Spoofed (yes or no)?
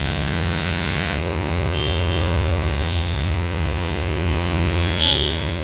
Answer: yes